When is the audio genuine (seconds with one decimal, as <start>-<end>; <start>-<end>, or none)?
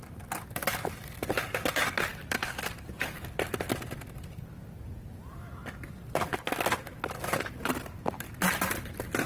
0.0-2.1; 3.5-9.3